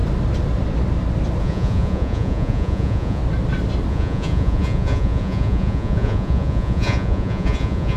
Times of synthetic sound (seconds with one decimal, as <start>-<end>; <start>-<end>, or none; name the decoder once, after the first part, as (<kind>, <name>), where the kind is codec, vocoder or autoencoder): 1.4-3.2 (vocoder, Vocos); 3.9-8.0